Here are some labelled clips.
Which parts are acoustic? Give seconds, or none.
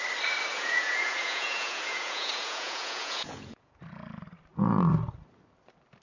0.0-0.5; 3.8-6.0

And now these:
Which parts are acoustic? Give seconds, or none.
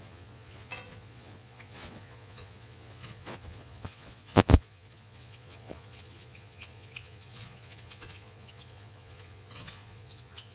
none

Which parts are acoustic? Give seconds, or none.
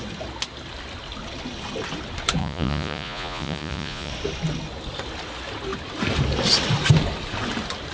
0.0-2.4; 4.1-7.9